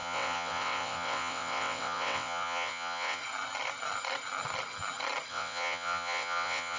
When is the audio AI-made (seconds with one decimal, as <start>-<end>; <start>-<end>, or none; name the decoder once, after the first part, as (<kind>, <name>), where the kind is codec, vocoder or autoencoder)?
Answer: 0.0-3.2 (vocoder, WaveNeXt); 5.3-6.8